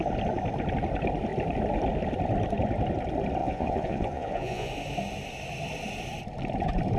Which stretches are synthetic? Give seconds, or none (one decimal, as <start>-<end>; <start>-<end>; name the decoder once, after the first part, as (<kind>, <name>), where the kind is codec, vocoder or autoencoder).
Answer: 3.4-4.7 (vocoder, Vocos)

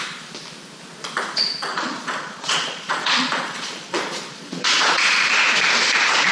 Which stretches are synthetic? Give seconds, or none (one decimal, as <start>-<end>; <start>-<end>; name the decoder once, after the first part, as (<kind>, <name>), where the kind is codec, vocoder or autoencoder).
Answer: 1.7-5.3 (vocoder, Vocos)